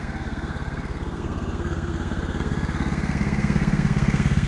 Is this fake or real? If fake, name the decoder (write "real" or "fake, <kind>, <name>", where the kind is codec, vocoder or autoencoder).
fake, codec, SNAC